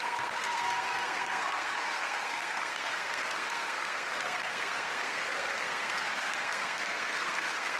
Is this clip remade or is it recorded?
remade